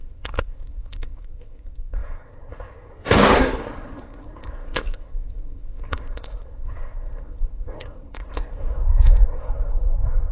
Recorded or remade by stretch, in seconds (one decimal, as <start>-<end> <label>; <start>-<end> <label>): 0.0-10.3 remade